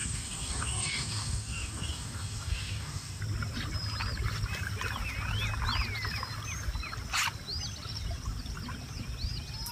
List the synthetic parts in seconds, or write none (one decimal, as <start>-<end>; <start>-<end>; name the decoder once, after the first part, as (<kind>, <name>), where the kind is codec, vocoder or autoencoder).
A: 0.0-3.2 (codec, DAC)